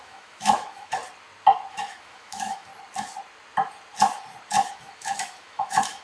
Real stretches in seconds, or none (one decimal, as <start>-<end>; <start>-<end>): 1.0-1.7; 2.7-4.7

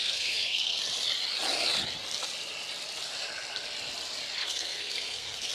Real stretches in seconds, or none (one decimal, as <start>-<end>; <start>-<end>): 0.8-4.4

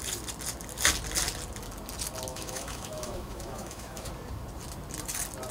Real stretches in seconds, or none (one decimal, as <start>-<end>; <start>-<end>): 0.0-2.3; 4.1-5.5

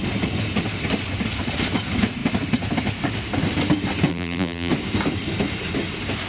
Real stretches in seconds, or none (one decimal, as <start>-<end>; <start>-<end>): 0.0-4.1; 4.7-6.3

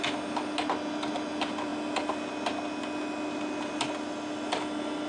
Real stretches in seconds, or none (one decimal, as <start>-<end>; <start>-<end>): 0.0-5.1

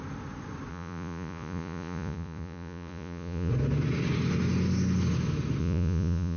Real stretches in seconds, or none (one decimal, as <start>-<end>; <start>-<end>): 0.0-0.7; 3.5-5.6